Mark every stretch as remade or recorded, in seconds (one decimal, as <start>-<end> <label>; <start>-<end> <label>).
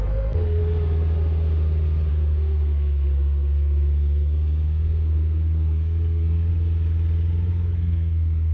0.0-0.6 remade; 0.6-2.1 recorded; 2.1-6.5 remade; 6.5-7.5 recorded; 7.5-8.5 remade